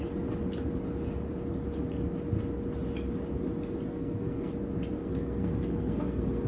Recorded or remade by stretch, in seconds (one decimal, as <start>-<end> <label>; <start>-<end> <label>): 0.0-3.9 recorded; 3.9-4.5 remade; 4.5-5.0 recorded; 5.0-6.5 remade